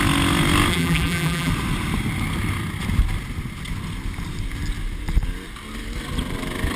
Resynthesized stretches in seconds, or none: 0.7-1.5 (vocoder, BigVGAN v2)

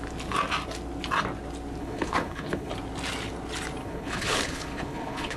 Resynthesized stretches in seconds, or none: 1.8-2.7 (codec, HILCodec); 3.8-5.4

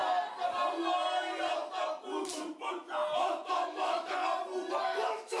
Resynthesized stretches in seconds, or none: 3.2-4.2 (autoencoder, DAC-VAE); 4.7-5.4

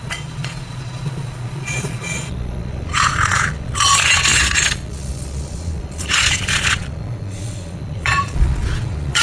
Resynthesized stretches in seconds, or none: 0.0-9.2 (vocoder, Vocos)

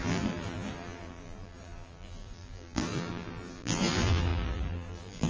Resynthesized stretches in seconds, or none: 0.0-5.3 (vocoder, BigVGAN v2)

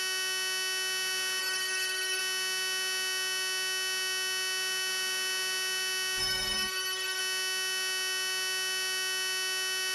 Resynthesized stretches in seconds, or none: 1.4-2.2 (codec, SNAC); 6.2-7.2

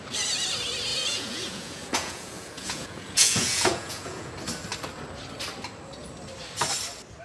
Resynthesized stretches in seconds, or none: 0.9-4.3 (vocoder, Vocos)